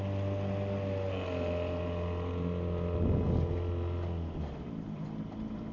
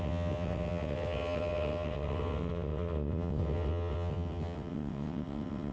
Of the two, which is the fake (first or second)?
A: second